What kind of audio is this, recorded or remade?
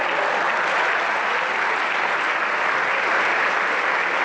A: recorded